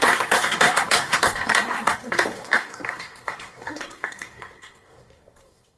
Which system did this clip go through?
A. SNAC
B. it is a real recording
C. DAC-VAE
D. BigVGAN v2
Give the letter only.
A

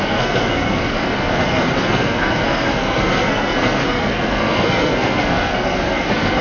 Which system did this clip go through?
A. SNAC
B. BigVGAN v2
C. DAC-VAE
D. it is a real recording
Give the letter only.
A